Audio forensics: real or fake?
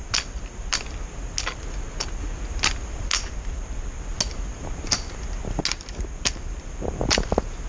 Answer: real